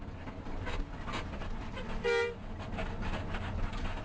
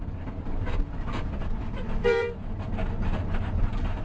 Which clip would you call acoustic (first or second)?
first